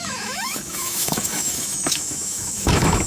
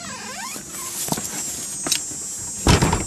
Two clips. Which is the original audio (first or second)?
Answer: second